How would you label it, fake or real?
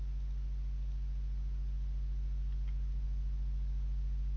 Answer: real